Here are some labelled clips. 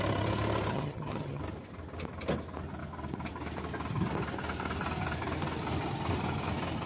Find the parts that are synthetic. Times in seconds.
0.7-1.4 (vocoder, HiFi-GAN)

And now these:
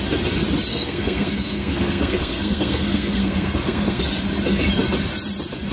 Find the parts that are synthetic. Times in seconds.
0.7-4.0 (codec, SNAC)

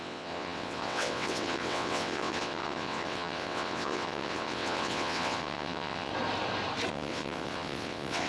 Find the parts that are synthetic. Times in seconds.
0.0-6.1 (vocoder, WaveNeXt); 6.9-8.3

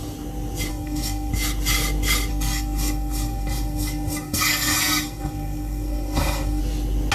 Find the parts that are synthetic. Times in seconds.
0.7-1.3 (codec, SNAC); 2.3-6.6

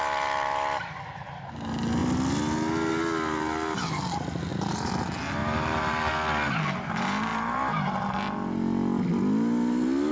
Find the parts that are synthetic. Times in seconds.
4.5-5.0 (vocoder, BigVGAN v2); 5.4-6.1

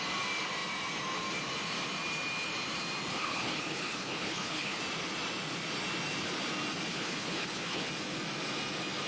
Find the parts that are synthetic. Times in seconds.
3.1-4.8 (codec, HILCodec); 6.9-7.9

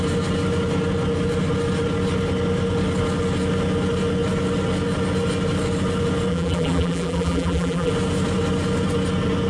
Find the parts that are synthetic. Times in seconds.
6.3-7.9 (vocoder, BigVGAN v2)

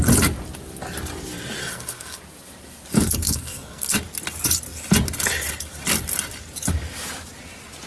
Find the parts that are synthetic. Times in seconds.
1.6-2.2 (codec, SNAC); 3.2-3.9